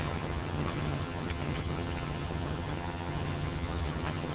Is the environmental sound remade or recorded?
remade